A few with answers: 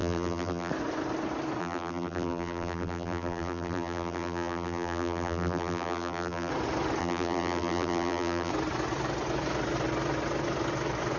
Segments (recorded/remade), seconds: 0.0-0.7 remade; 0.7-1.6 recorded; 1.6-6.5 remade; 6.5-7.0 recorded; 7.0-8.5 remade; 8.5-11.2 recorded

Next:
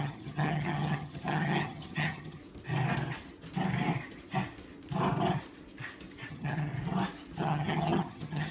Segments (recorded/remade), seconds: 0.0-2.4 remade; 2.4-6.3 recorded; 6.3-6.7 remade; 6.7-7.4 recorded; 7.4-8.5 remade